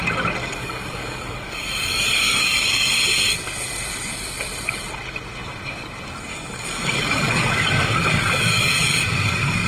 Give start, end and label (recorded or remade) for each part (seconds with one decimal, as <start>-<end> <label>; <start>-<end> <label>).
0.0-0.4 recorded; 0.4-2.9 remade; 2.9-6.3 recorded; 6.3-9.7 remade